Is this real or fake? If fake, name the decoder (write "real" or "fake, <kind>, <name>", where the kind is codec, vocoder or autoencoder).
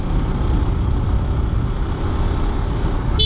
real